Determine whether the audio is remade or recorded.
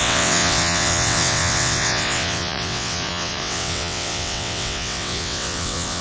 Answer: remade